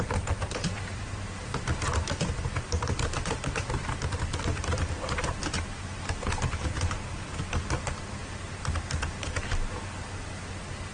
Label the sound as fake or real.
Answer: real